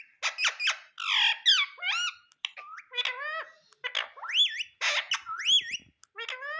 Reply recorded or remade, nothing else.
recorded